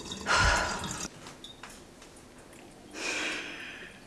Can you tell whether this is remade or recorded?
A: recorded